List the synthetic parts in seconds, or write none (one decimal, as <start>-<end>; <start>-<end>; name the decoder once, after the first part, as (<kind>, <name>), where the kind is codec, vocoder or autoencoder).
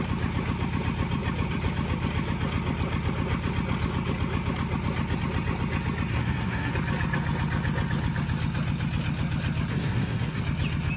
6.1-6.7 (codec, SNAC); 9.7-10.4